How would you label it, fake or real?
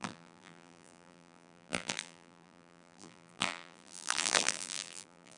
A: fake